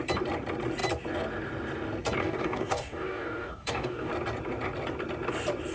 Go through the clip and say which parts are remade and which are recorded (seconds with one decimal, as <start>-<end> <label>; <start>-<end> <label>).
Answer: 0.0-2.2 recorded; 2.2-4.1 remade; 4.1-5.7 recorded